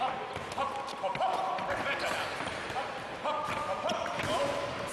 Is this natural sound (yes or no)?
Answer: yes